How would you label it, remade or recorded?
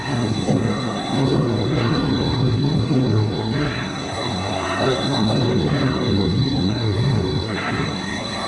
remade